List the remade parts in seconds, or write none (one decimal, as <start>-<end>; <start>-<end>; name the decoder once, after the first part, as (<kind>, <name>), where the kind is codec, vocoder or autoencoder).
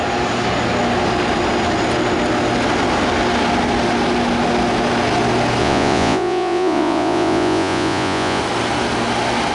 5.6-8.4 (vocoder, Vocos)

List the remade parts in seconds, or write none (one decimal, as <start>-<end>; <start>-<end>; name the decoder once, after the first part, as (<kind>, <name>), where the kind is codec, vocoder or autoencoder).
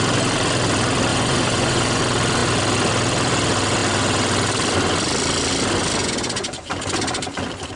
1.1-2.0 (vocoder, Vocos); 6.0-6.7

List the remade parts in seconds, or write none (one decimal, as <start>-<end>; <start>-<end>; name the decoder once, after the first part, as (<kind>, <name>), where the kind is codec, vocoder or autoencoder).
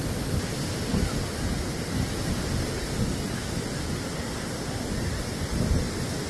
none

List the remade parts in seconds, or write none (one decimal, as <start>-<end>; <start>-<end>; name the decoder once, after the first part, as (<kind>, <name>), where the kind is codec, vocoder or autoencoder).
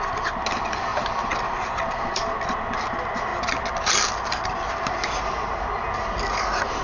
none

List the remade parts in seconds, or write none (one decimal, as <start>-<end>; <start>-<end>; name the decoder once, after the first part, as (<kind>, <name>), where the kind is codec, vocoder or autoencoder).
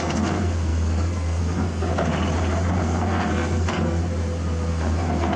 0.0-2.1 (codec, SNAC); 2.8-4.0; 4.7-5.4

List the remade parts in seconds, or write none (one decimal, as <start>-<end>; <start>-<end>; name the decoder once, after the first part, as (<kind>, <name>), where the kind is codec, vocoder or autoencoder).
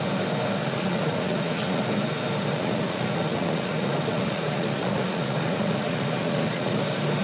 0.6-1.8 (vocoder, Vocos); 2.5-6.8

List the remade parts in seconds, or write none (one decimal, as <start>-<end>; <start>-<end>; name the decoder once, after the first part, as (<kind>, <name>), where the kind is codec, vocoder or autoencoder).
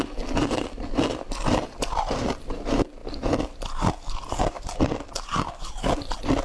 none